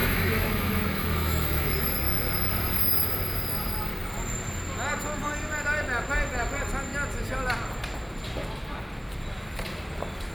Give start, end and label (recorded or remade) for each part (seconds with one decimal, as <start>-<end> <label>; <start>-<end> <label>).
0.0-1.7 remade; 1.7-10.3 recorded